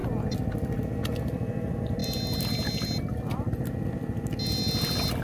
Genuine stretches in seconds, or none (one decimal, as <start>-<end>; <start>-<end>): 0.8-5.2